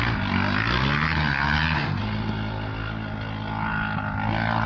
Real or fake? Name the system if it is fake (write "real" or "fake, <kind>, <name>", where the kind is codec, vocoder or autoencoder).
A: real